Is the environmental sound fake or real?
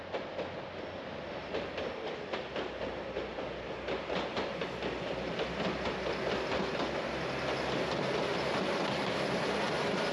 real